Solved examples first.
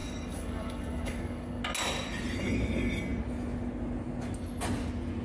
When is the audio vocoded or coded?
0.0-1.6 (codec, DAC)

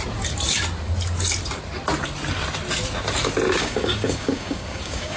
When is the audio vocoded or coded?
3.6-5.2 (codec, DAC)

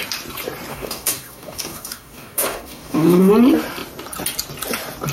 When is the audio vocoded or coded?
0.7-3.3 (codec, DAC)